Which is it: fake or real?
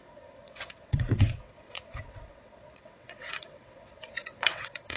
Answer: fake